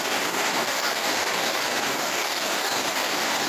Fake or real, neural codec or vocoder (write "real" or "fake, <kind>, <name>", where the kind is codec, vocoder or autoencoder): fake, codec, DAC